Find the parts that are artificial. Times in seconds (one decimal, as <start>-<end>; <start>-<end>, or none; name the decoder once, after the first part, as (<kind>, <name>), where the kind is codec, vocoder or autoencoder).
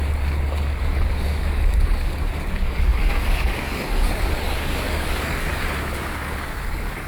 0.0-7.1 (codec, DAC)